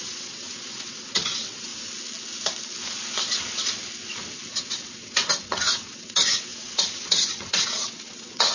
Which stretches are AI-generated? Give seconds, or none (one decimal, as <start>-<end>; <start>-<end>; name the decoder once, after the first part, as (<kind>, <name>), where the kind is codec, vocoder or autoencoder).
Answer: 0.0-1.7 (vocoder, WaveNeXt); 4.6-8.5